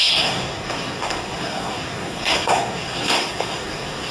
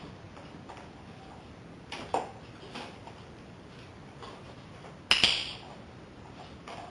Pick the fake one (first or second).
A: first